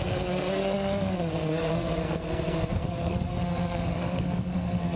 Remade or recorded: remade